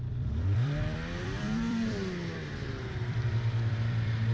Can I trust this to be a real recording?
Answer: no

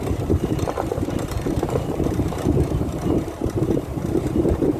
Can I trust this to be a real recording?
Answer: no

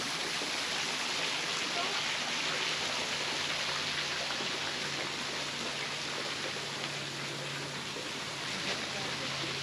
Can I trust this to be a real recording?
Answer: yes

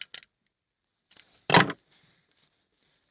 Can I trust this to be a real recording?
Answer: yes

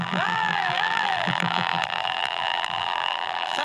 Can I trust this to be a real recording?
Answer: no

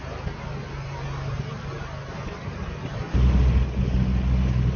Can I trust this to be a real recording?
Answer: yes